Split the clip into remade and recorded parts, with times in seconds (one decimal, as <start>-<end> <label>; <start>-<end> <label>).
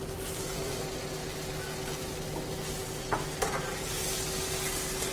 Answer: 0.0-5.1 recorded